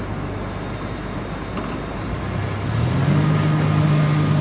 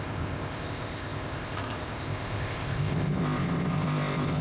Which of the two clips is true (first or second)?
first